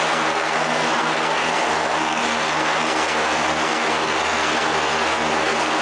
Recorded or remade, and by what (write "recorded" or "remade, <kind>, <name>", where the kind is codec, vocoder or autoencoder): remade, codec, SNAC